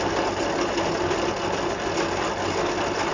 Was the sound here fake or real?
real